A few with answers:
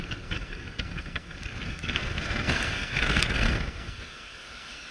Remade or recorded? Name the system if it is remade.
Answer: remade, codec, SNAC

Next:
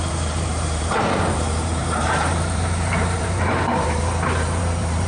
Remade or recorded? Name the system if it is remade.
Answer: remade, vocoder, BigVGAN v2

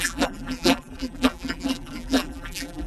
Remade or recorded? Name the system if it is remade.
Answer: remade, vocoder, BigVGAN v2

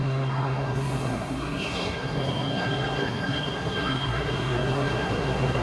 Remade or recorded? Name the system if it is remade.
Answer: remade, codec, SNAC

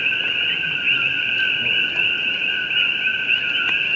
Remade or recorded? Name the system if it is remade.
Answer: recorded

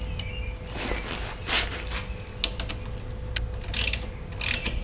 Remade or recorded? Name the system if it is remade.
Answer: recorded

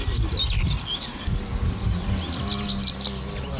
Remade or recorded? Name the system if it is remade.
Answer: recorded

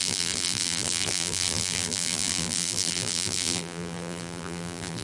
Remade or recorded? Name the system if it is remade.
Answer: remade, vocoder, BigVGAN v2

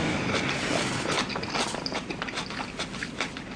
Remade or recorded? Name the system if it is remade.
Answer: recorded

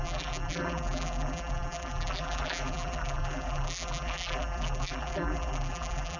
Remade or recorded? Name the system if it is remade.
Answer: remade, vocoder, BigVGAN v2